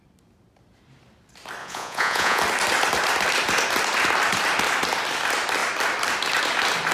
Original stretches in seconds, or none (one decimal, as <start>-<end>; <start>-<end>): 0.0-1.6; 2.4-6.9